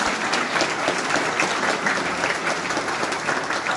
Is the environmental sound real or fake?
real